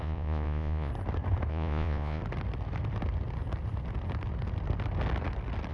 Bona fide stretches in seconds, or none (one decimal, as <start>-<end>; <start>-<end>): 0.9-1.5; 2.2-5.7